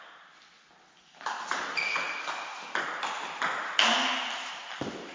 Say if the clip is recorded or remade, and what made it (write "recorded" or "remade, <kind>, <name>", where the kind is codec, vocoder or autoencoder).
recorded